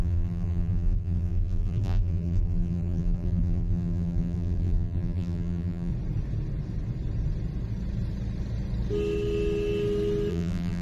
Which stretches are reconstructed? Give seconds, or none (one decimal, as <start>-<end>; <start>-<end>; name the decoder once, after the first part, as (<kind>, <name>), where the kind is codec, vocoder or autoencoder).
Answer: 0.0-5.9 (vocoder, BigVGAN v2); 10.3-10.8